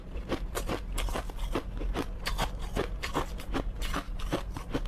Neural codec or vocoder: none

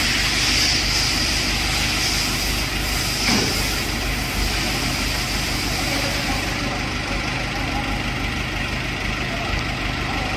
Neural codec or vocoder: none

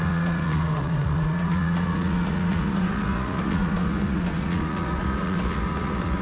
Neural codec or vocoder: vocoder, Vocos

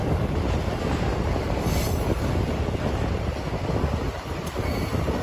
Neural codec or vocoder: none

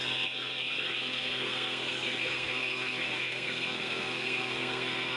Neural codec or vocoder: codec, SNAC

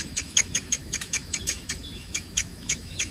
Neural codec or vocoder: autoencoder, DAC-VAE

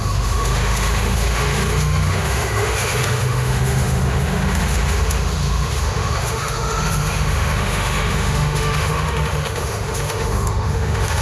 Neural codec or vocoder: autoencoder, DAC-VAE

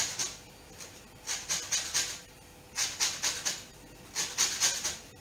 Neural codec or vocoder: none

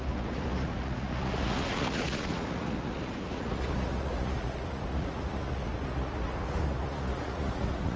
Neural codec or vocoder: vocoder, Vocos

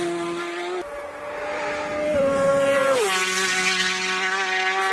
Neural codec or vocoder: none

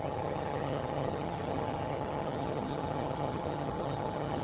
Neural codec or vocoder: vocoder, HiFi-GAN